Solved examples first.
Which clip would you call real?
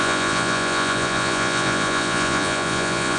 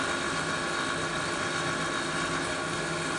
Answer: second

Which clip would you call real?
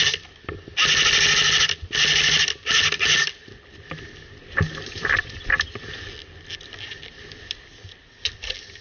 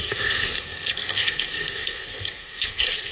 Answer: first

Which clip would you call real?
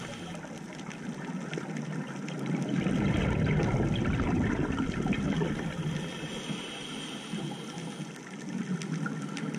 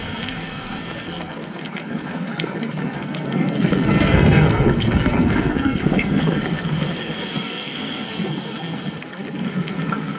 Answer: first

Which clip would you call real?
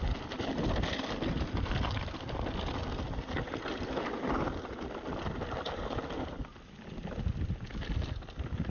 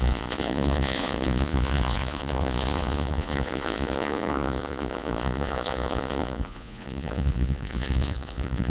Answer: first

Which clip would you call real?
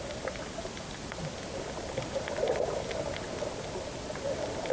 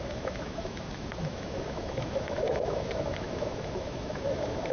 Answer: first